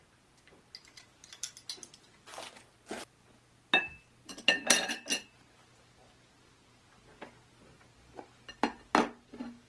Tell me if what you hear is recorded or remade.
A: recorded